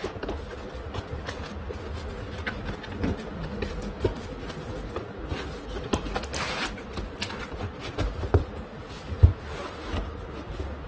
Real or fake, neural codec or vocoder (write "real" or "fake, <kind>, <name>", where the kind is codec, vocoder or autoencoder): real